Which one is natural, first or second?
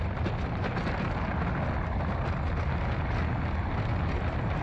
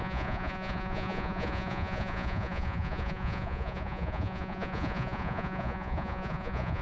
first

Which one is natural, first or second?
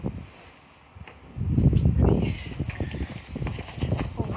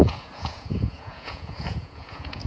first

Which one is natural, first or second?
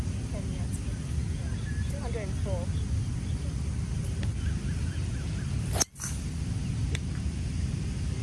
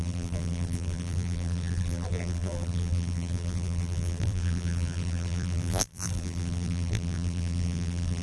first